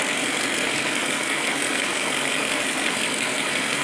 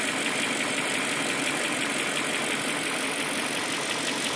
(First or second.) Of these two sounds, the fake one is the first